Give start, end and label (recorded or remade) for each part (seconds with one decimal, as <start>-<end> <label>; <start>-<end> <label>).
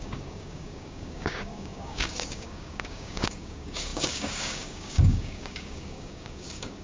0.0-6.8 remade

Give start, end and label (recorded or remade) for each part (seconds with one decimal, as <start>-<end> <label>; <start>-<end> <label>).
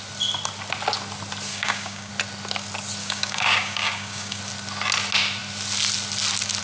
0.0-1.5 recorded; 1.5-2.1 remade; 2.1-3.0 recorded; 3.0-4.4 remade; 4.4-6.6 recorded